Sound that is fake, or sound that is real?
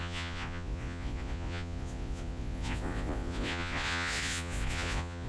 fake